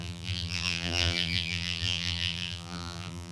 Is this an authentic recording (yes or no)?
no